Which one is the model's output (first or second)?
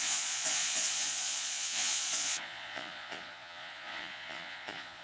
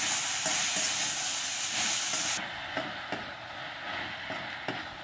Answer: first